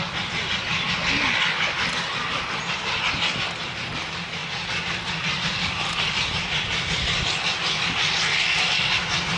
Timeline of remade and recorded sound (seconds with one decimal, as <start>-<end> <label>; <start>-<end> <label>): 0.0-9.4 recorded